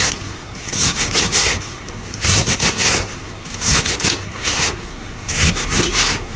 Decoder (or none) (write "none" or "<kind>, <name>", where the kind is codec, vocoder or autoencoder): codec, SNAC